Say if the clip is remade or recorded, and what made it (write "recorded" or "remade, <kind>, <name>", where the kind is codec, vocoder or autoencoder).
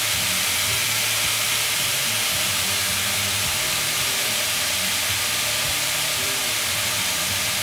remade, vocoder, BigVGAN v2